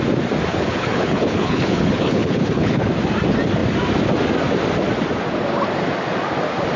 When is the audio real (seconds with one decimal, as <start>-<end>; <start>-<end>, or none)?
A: 0.0-0.5; 2.9-6.8